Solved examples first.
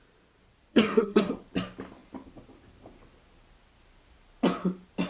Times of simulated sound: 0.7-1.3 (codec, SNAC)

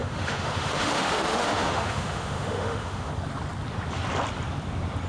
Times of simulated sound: 0.0-3.1 (autoencoder, DAC-VAE)

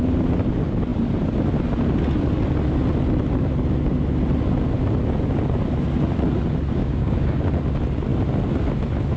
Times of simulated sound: 6.8-7.4 (codec, DAC)

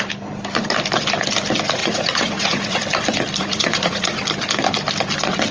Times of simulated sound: 1.8-2.8 (vocoder, Vocos); 3.4-4.2

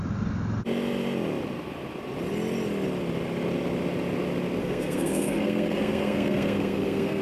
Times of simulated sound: 4.6-7.2 (codec, SNAC)

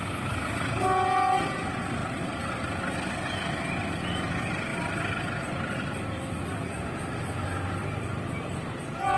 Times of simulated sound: 2.0-3.1 (vocoder, BigVGAN v2); 7.8-8.5

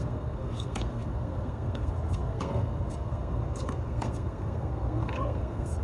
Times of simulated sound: 0.0-5.8 (codec, SNAC)

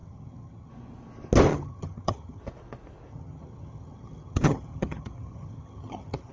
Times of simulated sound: 0.0-0.7 (vocoder, HiFi-GAN); 1.5-2.4; 3.1-6.3